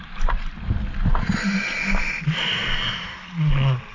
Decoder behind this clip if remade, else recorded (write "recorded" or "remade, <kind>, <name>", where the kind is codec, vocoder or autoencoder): recorded